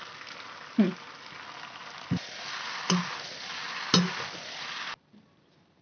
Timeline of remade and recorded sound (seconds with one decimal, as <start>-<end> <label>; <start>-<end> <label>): 0.0-5.8 recorded